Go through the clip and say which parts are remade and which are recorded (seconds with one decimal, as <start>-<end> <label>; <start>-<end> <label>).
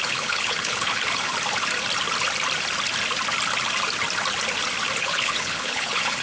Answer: 0.0-1.3 remade; 1.3-5.0 recorded; 5.0-6.2 remade